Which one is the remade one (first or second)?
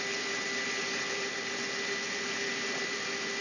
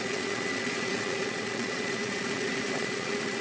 second